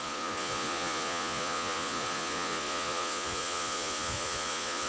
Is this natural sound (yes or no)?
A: no